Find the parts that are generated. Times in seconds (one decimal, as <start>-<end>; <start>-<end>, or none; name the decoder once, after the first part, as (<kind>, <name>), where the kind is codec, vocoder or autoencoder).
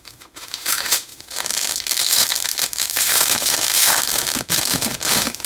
0.0-5.5 (autoencoder, DAC-VAE)